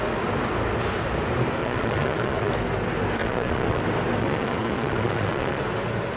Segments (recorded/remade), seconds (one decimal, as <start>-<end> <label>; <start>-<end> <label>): 0.0-1.6 recorded; 1.6-2.5 remade; 2.5-3.2 recorded; 3.2-3.8 remade; 3.8-4.2 recorded; 4.2-5.6 remade; 5.6-6.2 recorded